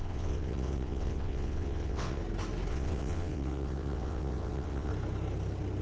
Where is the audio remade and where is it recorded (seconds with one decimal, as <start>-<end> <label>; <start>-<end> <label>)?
0.0-2.2 remade; 2.2-2.7 recorded; 2.7-4.9 remade; 4.9-5.8 recorded